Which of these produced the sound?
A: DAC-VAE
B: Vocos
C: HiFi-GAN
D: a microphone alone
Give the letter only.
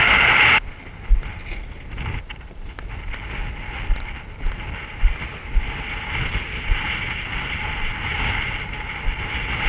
D